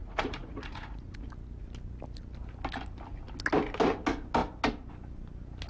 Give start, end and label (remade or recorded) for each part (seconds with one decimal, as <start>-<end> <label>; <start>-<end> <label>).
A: 0.0-1.2 remade; 1.2-5.7 recorded